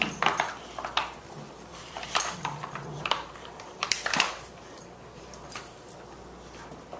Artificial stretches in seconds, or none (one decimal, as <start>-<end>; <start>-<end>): 1.7-5.9